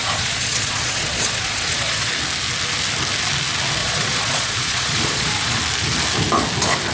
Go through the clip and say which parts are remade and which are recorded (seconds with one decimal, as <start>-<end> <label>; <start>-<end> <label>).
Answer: 0.0-2.1 remade; 2.1-3.8 recorded; 3.8-5.6 remade; 5.6-6.9 recorded